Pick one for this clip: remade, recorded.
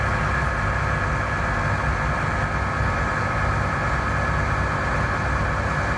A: recorded